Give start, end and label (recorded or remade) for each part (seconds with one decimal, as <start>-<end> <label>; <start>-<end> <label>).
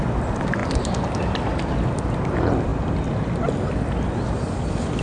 0.0-0.6 remade; 0.6-1.2 recorded; 1.2-2.7 remade; 2.7-3.4 recorded; 3.4-5.0 remade